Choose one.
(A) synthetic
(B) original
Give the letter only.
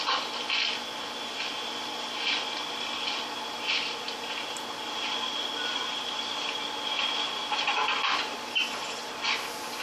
B